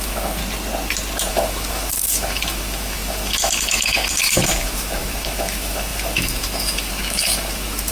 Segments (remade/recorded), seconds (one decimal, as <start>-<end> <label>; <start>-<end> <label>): 0.0-0.4 remade; 0.4-1.3 recorded; 1.3-7.9 remade

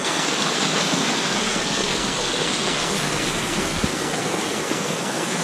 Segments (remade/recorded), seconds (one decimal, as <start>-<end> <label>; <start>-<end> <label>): 0.0-5.4 remade

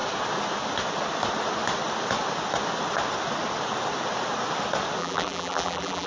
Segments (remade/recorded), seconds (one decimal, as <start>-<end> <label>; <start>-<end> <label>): 0.0-5.0 recorded; 5.0-6.1 remade